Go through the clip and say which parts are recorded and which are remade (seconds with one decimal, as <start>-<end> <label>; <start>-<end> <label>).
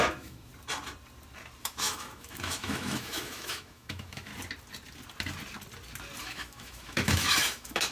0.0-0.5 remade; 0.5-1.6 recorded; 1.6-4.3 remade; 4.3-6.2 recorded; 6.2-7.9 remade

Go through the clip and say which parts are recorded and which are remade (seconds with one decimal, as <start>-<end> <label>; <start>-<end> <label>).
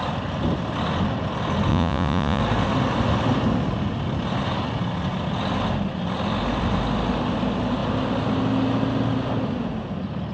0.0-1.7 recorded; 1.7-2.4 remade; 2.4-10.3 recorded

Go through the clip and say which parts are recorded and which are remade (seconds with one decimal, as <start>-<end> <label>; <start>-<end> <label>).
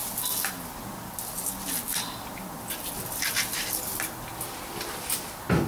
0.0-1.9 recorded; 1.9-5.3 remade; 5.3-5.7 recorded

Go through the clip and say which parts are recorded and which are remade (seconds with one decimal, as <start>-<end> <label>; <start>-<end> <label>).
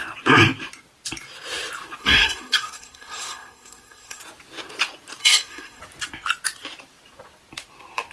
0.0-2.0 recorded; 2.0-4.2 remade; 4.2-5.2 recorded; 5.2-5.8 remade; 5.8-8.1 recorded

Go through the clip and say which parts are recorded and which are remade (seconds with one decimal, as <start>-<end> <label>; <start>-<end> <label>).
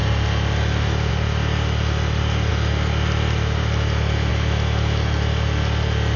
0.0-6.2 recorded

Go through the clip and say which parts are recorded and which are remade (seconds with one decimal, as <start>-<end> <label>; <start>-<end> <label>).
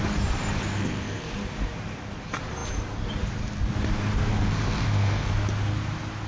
0.0-0.7 recorded; 0.7-1.3 remade; 1.3-4.3 recorded; 4.3-5.3 remade; 5.3-6.3 recorded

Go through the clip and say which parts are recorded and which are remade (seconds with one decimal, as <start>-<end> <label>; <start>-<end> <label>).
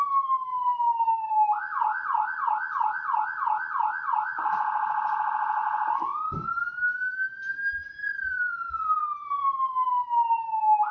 0.0-10.9 recorded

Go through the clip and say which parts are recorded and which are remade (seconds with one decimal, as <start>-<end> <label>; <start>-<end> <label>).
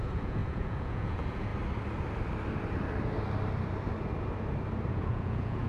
0.0-1.5 remade; 1.5-4.9 recorded; 4.9-5.7 remade